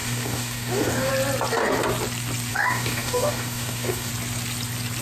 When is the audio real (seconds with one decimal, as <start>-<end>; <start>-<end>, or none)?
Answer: 1.1-2.5; 4.1-5.0